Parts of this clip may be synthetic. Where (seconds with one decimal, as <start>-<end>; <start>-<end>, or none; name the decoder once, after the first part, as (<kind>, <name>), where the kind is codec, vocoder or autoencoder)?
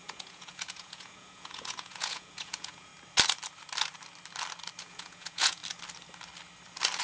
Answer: 0.0-2.9 (vocoder, Vocos); 4.8-5.6